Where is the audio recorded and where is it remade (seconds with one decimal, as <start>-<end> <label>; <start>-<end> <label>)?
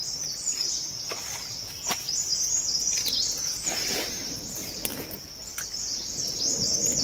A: 0.0-7.0 recorded